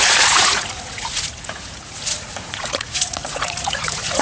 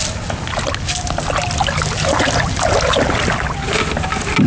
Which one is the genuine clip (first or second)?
second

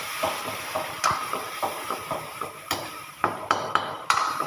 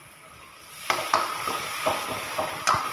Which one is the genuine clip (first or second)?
second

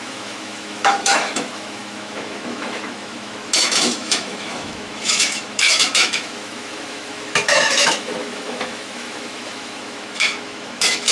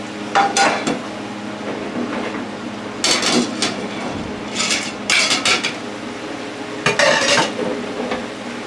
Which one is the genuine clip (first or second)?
second